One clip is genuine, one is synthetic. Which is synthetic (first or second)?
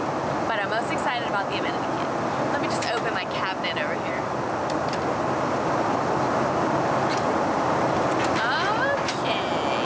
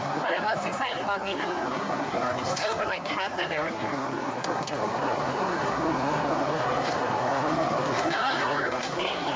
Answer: second